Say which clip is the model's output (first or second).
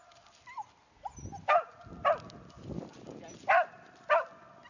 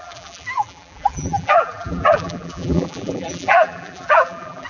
second